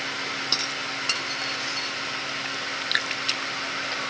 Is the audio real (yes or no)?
yes